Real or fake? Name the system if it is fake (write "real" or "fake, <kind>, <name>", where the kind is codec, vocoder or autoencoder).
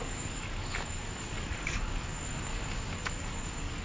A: fake, codec, DAC